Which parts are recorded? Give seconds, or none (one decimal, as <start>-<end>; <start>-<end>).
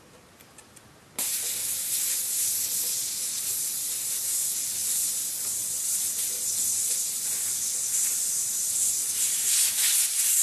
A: 0.0-10.4